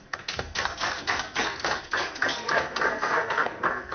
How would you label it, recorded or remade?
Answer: remade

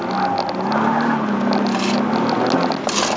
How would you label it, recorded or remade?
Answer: recorded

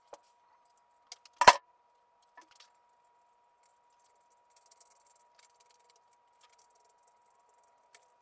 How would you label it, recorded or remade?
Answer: recorded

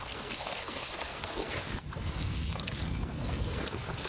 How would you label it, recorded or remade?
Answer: remade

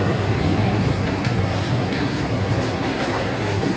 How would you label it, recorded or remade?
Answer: remade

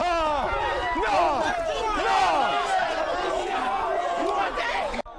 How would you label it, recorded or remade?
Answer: recorded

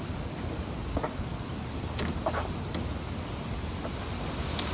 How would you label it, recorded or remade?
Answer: recorded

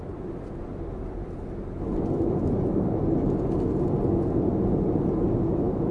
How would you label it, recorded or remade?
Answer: recorded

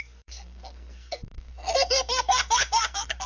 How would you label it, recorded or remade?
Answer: remade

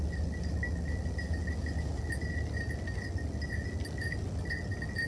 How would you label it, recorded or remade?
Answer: recorded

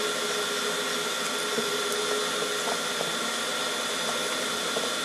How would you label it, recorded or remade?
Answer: recorded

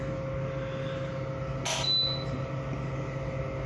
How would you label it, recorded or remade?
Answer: recorded